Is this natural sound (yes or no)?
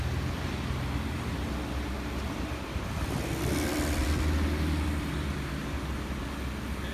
yes